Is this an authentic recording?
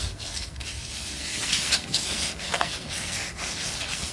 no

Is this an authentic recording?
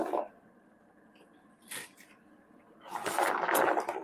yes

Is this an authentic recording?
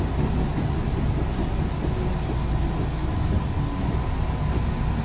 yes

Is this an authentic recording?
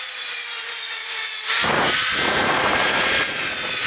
no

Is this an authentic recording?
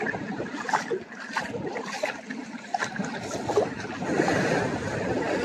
yes